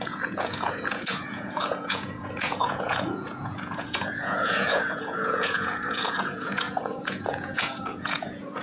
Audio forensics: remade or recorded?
remade